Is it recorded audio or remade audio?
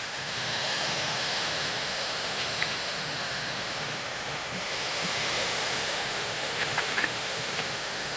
remade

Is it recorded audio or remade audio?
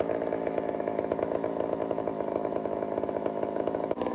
remade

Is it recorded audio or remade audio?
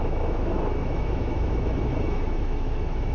remade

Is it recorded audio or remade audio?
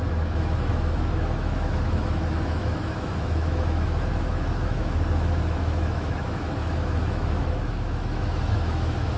remade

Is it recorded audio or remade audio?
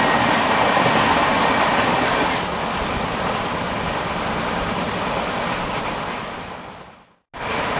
recorded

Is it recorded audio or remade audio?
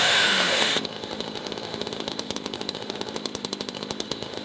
remade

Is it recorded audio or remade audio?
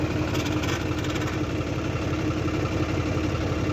recorded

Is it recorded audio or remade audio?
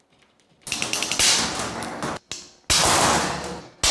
recorded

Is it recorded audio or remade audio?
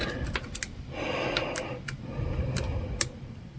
recorded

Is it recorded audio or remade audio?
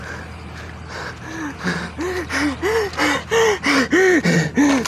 recorded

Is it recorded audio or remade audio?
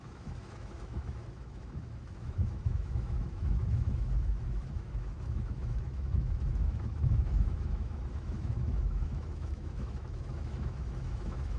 remade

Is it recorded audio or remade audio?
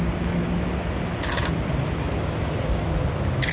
recorded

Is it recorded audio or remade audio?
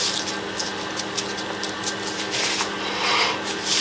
recorded